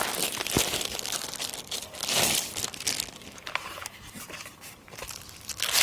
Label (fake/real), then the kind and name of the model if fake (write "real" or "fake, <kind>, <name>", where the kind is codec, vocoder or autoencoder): fake, vocoder, BigVGAN v2